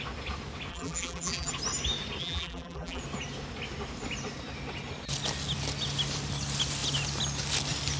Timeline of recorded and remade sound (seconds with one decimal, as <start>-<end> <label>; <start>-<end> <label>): 0.0-0.7 recorded; 0.7-1.5 remade; 1.5-2.2 recorded; 2.2-3.0 remade; 3.0-8.0 recorded